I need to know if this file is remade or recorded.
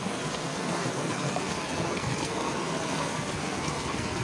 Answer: remade